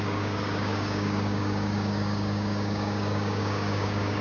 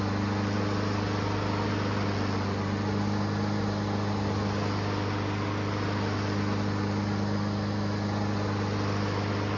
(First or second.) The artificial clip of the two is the first